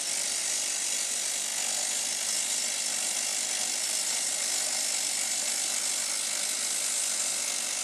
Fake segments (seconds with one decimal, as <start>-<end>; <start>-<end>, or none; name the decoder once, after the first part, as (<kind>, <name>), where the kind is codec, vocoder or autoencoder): 0.4-1.1 (vocoder, BigVGAN v2); 3.3-5.8